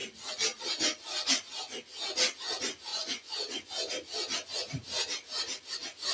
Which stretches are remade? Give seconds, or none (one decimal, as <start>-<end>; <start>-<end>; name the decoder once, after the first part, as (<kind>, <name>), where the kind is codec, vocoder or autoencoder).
2.9-3.7 (vocoder, Vocos)